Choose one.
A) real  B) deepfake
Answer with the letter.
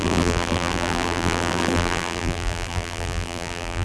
B